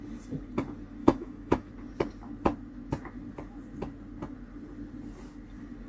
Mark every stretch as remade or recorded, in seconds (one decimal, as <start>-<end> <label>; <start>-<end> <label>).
0.0-1.0 recorded; 1.0-1.7 remade; 1.7-5.9 recorded